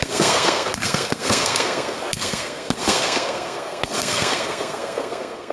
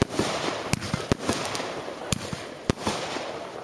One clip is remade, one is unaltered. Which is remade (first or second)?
first